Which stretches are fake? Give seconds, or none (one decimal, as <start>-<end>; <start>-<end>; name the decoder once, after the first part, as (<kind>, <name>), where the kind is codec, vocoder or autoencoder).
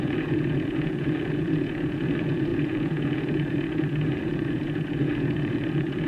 0.0-6.1 (vocoder, Vocos)